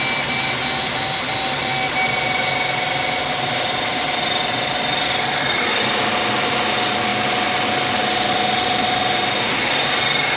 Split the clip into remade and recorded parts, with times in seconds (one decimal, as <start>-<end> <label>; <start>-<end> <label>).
0.0-10.4 recorded